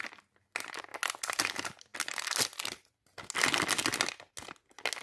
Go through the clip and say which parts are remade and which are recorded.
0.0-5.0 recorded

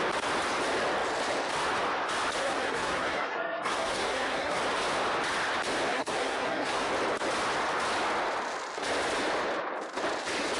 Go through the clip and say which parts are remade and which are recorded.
0.0-2.4 recorded; 2.4-4.6 remade; 4.6-5.9 recorded; 5.9-6.9 remade; 6.9-10.6 recorded

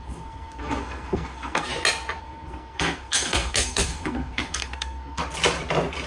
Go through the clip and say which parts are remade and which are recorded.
0.0-1.7 remade; 1.7-2.2 recorded; 2.2-5.2 remade; 5.2-6.1 recorded

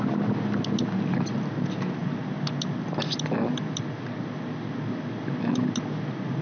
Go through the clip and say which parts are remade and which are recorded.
0.0-6.4 recorded

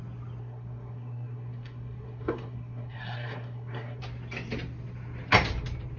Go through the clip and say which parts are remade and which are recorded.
0.0-0.4 recorded; 0.4-4.0 remade; 4.0-6.0 recorded